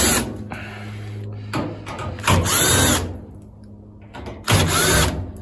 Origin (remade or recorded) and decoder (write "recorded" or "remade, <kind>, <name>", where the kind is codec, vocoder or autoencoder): recorded